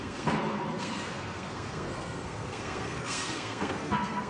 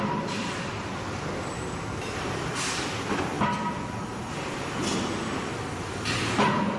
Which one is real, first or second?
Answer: second